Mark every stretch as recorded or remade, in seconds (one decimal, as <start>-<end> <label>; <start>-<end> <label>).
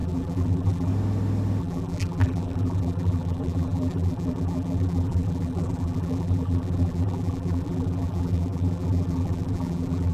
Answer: 0.0-0.9 remade; 0.9-1.6 recorded; 1.6-10.1 remade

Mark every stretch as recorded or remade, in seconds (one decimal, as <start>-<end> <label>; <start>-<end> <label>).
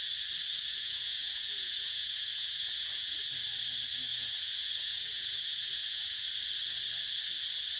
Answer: 0.0-0.6 recorded; 0.6-3.2 remade; 3.2-4.1 recorded; 4.1-6.2 remade; 6.2-7.8 recorded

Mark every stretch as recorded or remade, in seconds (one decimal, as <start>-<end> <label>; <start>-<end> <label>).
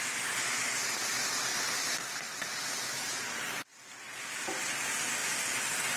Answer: 0.0-6.0 recorded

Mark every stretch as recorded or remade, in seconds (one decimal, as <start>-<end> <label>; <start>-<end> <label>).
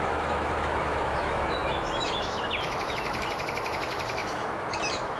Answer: 0.0-5.2 remade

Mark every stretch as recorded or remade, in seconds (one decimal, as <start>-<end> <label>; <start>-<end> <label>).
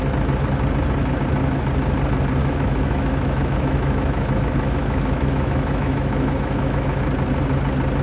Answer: 0.0-2.4 recorded; 2.4-7.0 remade; 7.0-8.0 recorded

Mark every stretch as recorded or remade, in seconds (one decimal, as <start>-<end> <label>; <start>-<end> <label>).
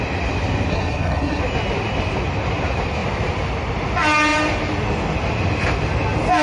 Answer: 0.0-0.7 recorded; 0.7-1.4 remade; 1.4-6.4 recorded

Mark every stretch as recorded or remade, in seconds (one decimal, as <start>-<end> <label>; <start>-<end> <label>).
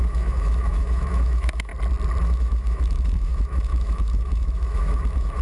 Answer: 0.0-1.7 remade; 1.7-2.2 recorded; 2.2-5.4 remade